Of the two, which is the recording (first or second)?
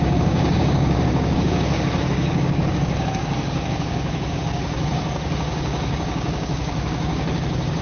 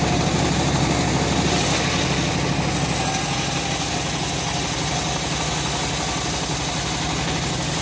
second